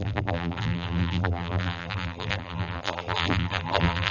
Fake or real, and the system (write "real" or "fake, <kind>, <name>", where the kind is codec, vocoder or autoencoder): fake, vocoder, BigVGAN v2